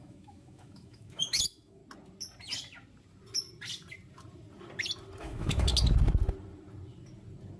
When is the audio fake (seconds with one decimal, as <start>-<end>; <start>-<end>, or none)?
0.0-1.8; 5.2-5.7